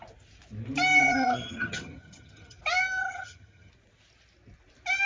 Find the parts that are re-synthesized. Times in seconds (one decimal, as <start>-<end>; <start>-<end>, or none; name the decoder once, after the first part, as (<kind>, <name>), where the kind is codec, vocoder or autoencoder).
1.0-2.6 (vocoder, HiFi-GAN); 3.1-3.7